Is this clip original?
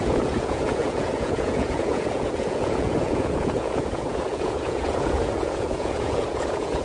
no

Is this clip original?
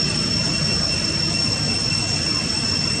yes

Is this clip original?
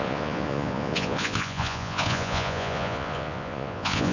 no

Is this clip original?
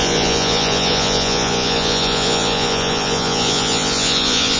no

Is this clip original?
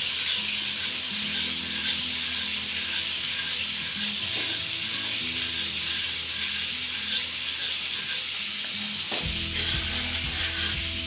yes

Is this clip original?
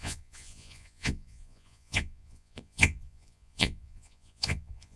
no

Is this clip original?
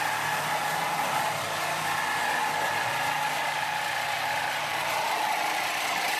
yes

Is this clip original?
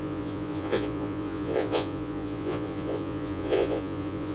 no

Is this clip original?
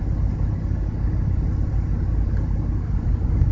yes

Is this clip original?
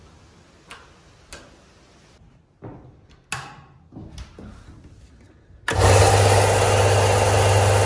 yes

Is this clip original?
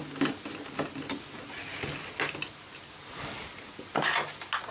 yes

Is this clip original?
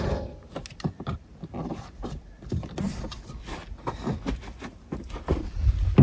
yes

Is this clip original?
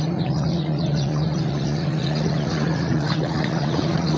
no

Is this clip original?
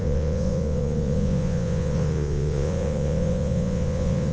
no